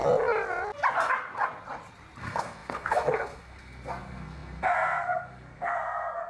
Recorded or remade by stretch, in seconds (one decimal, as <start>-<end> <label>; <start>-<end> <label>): 0.0-2.2 recorded; 2.2-6.3 remade